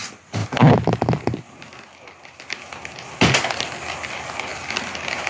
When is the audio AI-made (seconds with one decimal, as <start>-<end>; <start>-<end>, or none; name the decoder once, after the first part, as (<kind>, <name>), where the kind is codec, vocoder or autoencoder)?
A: none